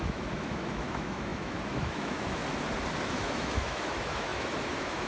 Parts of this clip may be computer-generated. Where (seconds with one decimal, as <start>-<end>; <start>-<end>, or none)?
0.0-2.4; 3.0-5.1